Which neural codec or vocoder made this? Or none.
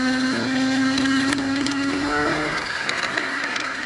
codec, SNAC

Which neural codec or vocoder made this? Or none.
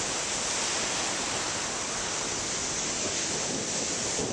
none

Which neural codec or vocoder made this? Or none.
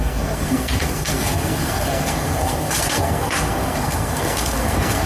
codec, SNAC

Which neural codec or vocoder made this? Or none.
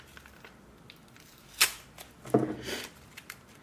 none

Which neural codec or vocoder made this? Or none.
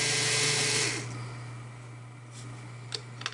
none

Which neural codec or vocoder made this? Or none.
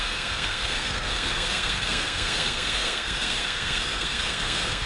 codec, SNAC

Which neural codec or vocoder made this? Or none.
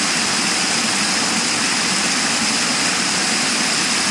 none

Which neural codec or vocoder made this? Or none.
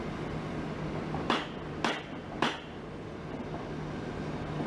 none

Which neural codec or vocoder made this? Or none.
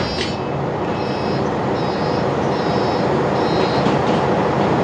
none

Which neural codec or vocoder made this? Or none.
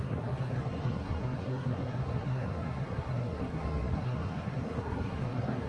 codec, SNAC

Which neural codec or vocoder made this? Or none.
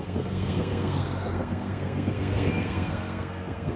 codec, SNAC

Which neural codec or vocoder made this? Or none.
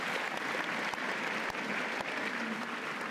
none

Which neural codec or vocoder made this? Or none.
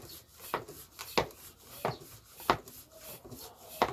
none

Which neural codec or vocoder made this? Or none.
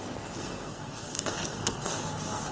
codec, SNAC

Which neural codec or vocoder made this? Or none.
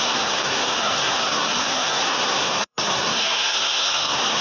codec, SNAC